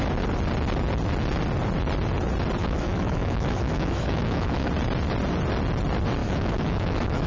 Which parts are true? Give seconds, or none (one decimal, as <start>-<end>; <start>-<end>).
0.0-2.6; 4.7-6.2